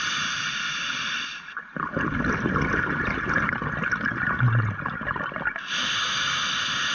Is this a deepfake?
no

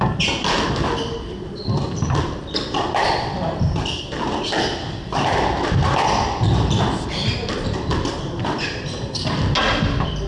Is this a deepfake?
no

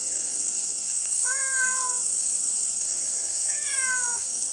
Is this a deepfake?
yes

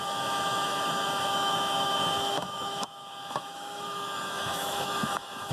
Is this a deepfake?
yes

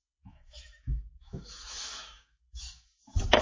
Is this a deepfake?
yes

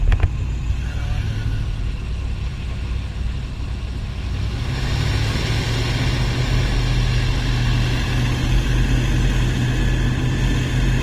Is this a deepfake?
no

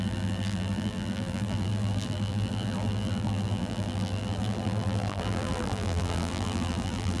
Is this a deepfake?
yes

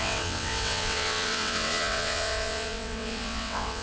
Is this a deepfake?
yes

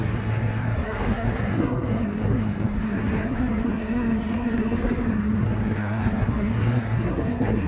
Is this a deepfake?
yes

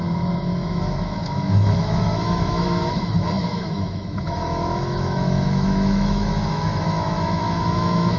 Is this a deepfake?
yes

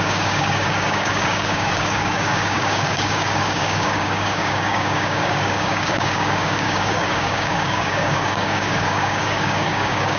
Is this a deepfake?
yes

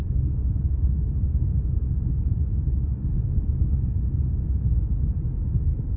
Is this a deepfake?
no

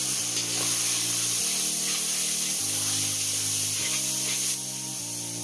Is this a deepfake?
no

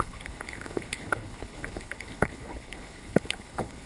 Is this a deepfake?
yes